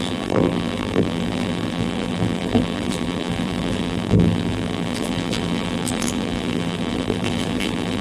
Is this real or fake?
fake